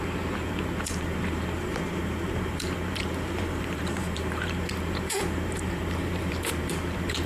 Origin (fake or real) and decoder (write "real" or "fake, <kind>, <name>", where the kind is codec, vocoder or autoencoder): fake, vocoder, BigVGAN v2